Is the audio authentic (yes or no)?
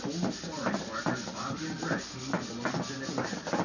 yes